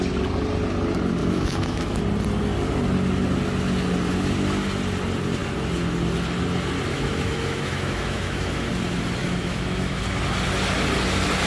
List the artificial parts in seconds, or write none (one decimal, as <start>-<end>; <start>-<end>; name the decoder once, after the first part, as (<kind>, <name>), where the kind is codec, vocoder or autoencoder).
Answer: 1.2-2.0 (autoencoder, DAC-VAE); 6.9-8.7; 9.2-10.0